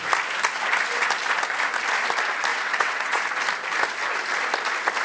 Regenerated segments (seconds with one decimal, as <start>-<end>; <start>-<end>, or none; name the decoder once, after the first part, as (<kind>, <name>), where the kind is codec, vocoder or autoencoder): 2.5-3.2 (vocoder, WaveNeXt)